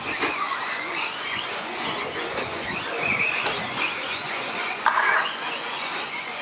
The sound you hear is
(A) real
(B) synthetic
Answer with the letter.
B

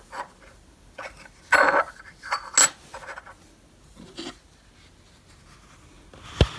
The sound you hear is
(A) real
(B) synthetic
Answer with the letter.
A